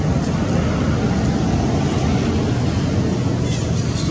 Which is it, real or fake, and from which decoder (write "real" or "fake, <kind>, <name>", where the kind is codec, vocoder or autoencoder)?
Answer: real